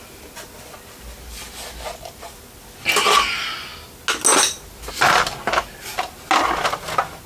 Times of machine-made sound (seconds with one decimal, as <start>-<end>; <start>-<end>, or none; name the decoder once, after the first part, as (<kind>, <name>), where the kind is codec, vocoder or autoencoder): none